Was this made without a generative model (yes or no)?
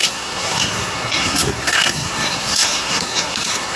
no